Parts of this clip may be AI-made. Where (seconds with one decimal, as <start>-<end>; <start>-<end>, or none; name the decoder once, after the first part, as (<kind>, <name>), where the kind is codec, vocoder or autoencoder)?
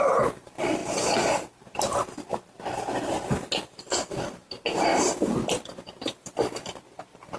0.0-0.8 (vocoder, BigVGAN v2); 1.6-2.3; 3.7-4.9; 5.5-7.4